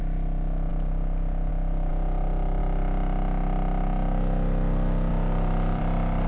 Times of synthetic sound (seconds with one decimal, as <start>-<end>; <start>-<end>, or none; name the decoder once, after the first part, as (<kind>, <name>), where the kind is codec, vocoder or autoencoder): 0.7-1.5 (vocoder, BigVGAN v2); 5.1-5.8